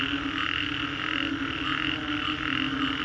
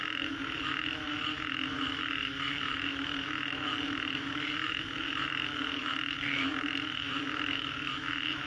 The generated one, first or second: second